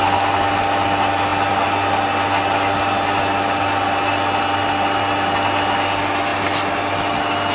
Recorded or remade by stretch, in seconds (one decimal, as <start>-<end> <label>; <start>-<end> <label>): 0.0-7.5 recorded